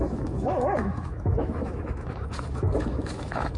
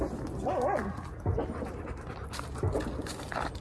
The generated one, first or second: first